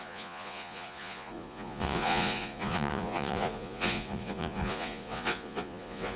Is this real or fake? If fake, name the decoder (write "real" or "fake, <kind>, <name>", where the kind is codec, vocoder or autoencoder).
fake, vocoder, Vocos